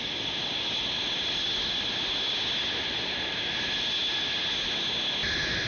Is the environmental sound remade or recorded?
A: recorded